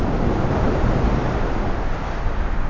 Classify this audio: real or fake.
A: real